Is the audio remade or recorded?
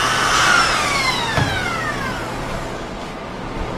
recorded